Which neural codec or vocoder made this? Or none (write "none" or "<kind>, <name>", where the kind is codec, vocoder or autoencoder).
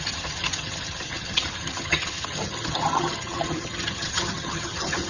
vocoder, HiFi-GAN